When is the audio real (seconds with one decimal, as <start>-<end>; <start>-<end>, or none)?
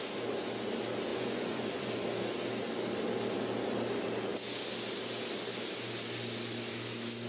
0.0-1.1; 1.9-7.3